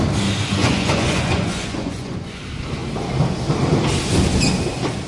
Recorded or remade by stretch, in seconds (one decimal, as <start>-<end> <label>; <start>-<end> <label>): 0.0-0.6 recorded; 0.6-2.4 remade; 2.4-5.1 recorded